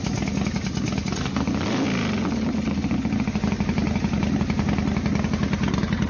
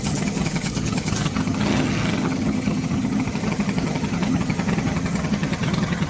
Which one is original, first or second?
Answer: first